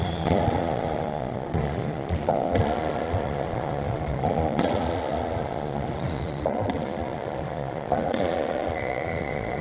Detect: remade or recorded remade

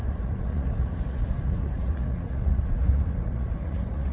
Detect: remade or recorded remade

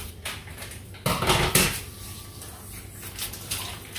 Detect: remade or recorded recorded